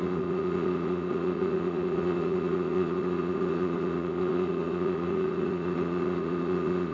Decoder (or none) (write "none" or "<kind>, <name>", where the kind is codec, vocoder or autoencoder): vocoder, Vocos